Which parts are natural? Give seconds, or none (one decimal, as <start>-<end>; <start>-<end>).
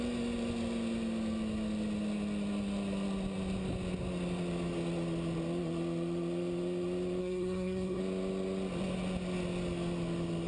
0.0-7.2; 8.0-10.5